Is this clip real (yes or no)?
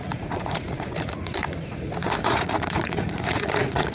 no